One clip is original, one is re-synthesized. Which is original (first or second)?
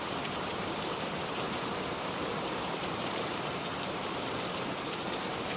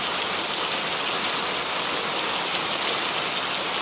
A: second